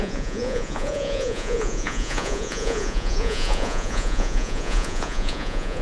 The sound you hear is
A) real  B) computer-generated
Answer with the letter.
B